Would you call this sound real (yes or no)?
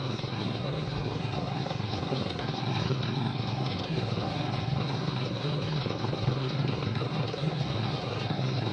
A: no